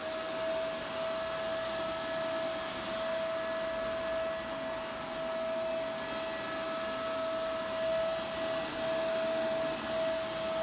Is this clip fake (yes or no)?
no